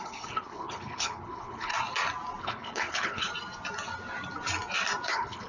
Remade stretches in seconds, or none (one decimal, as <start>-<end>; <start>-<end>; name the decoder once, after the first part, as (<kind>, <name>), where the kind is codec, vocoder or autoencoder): 0.0-1.7 (codec, HILCodec); 2.4-3.3; 5.1-5.5